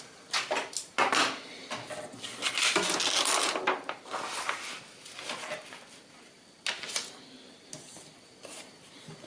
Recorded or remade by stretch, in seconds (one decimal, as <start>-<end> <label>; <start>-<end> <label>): 0.0-9.3 recorded